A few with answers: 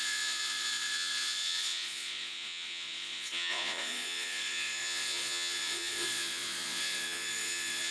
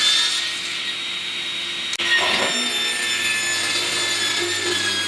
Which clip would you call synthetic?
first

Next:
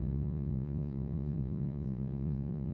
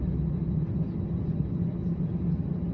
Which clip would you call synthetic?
first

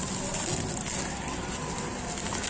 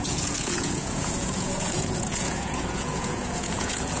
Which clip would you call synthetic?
second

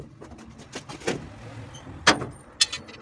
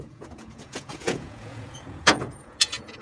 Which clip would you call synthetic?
second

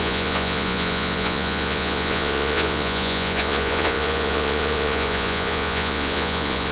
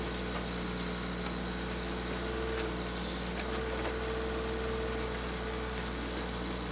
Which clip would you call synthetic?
first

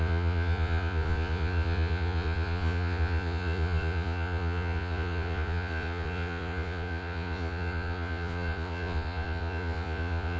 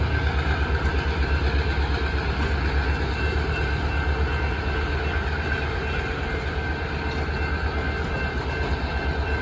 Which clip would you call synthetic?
first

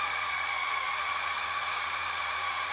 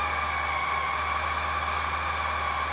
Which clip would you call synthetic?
first